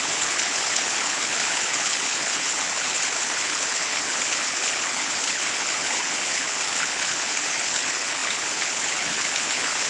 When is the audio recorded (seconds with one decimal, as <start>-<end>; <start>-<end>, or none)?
none